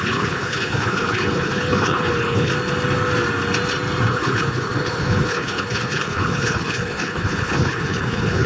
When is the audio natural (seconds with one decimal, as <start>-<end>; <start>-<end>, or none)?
2.5-4.1

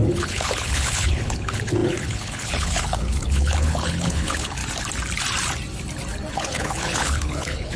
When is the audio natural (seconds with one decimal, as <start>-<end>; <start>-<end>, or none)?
4.6-6.3

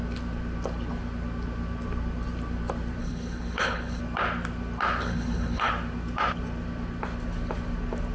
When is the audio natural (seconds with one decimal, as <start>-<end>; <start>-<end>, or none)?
0.0-3.0; 4.0-5.0; 5.7-8.1